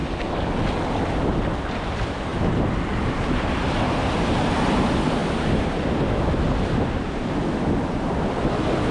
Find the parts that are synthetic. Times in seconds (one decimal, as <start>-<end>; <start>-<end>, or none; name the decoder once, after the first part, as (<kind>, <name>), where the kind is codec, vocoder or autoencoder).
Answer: 5.2-8.1 (vocoder, BigVGAN v2)